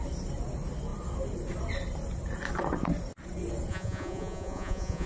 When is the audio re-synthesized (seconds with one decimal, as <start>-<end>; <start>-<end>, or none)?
3.7-5.1

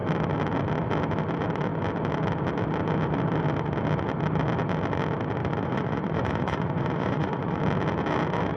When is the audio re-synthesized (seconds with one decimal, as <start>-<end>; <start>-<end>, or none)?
5.4-7.6

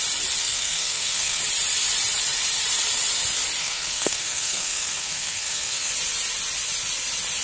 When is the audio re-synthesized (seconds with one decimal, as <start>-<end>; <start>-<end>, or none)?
0.4-1.4; 3.6-5.9

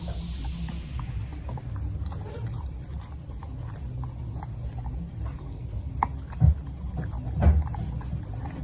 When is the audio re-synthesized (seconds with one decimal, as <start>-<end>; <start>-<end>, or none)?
5.4-5.9

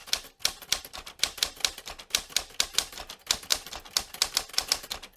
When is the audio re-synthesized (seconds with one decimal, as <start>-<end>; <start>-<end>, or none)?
none

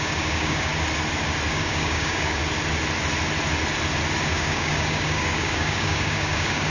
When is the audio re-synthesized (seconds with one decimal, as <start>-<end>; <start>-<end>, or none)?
0.0-0.7; 1.5-2.4; 4.3-6.7